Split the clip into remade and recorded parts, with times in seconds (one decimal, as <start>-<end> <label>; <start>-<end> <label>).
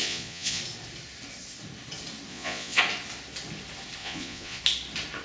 0.0-0.6 remade; 0.6-2.3 recorded; 2.3-2.8 remade; 2.8-4.0 recorded; 4.0-4.6 remade; 4.6-5.2 recorded